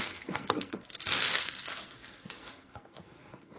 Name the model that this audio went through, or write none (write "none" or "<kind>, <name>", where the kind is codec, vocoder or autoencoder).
codec, SNAC